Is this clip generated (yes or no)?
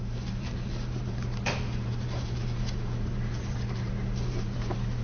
yes